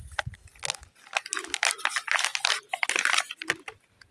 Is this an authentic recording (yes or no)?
yes